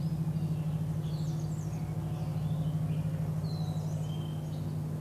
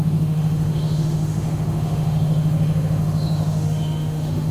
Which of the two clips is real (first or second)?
first